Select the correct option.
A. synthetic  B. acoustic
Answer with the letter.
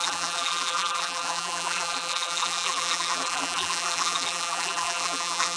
A